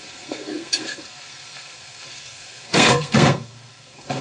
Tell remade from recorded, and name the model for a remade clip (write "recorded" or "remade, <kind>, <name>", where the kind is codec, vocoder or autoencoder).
remade, codec, SNAC